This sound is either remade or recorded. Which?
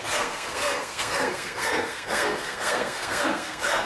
remade